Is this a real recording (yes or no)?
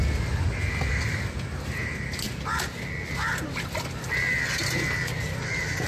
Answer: yes